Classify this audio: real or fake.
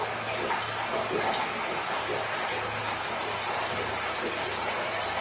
real